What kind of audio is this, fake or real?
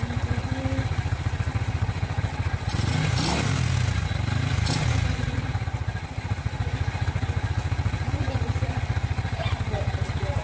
real